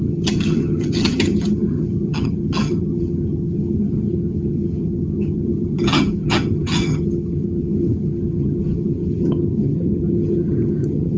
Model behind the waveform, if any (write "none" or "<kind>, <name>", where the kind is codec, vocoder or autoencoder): vocoder, HiFi-GAN